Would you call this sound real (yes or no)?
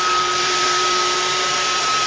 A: no